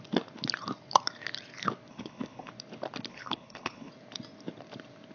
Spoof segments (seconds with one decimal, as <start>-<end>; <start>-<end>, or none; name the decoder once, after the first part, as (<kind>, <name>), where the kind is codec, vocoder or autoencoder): 1.9-2.5 (codec, HILCodec); 3.1-3.9